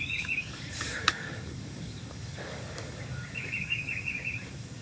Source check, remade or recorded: remade